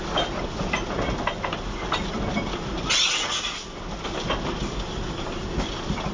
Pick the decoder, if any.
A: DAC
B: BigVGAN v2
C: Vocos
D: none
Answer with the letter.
D